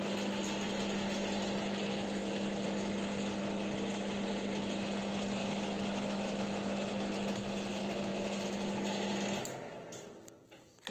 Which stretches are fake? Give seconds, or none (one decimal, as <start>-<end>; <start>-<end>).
5.4-6.9